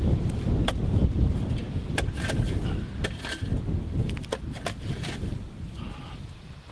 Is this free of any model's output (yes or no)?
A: yes